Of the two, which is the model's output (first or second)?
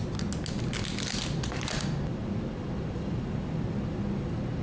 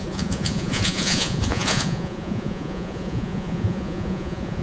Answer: second